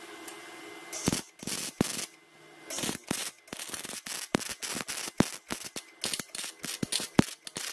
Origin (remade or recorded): recorded